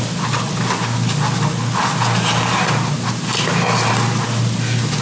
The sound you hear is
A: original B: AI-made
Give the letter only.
A